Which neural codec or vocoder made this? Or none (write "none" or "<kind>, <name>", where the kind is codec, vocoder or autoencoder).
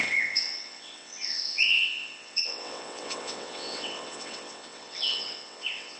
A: vocoder, WaveNeXt